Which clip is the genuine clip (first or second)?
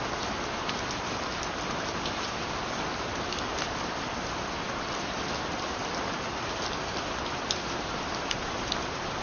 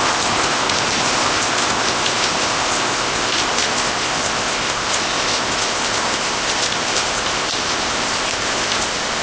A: first